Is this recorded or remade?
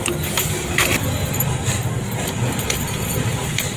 remade